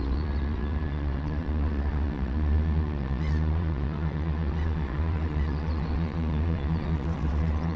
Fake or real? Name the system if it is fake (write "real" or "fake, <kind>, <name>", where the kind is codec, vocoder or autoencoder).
fake, vocoder, WaveNeXt